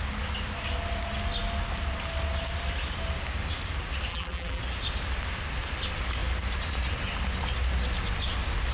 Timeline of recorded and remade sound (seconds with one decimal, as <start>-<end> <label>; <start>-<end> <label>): 0.0-4.1 recorded; 4.1-4.6 remade; 4.6-8.7 recorded